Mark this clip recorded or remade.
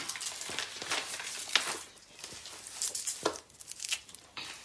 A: recorded